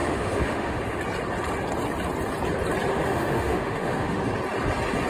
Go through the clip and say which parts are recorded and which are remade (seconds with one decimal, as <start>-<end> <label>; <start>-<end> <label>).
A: 0.0-1.0 remade; 1.0-2.9 recorded; 2.9-4.2 remade; 4.2-5.1 recorded